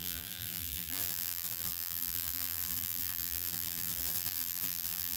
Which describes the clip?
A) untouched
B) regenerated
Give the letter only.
B